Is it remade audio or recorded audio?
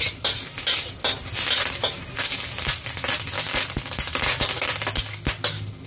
recorded